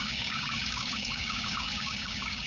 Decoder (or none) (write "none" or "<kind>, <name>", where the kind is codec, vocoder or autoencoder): codec, DAC